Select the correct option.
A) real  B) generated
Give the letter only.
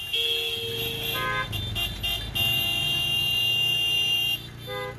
A